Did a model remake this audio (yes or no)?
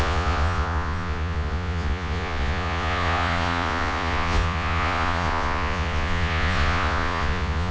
yes